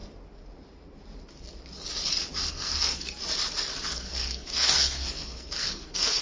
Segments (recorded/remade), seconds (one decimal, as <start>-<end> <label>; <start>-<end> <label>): 0.0-2.5 recorded; 2.5-3.2 remade; 3.2-3.9 recorded; 3.9-6.2 remade